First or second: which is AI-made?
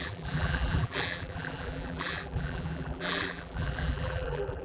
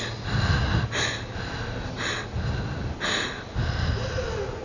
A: first